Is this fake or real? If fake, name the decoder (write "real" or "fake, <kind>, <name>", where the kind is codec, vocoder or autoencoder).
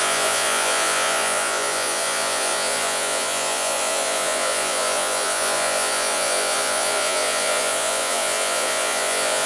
fake, vocoder, Vocos